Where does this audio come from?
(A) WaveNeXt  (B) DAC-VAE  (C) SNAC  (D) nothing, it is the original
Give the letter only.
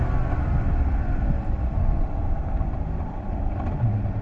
D